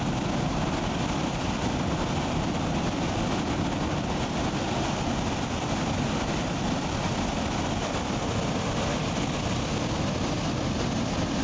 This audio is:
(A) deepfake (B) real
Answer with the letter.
B